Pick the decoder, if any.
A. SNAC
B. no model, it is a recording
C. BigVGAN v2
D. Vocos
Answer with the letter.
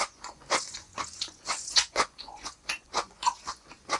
D